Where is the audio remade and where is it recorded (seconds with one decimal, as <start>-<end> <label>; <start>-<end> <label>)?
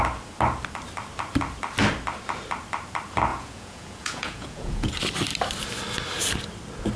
0.0-3.3 recorded; 3.3-4.9 remade; 4.9-7.0 recorded